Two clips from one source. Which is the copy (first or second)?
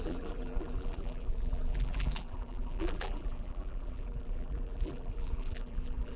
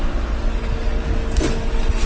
first